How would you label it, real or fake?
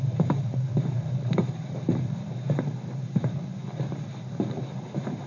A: fake